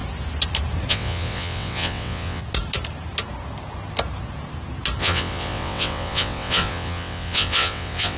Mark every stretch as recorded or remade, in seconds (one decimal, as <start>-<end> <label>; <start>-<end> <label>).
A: 0.0-0.9 recorded; 0.9-2.4 remade; 2.4-5.0 recorded; 5.0-8.2 remade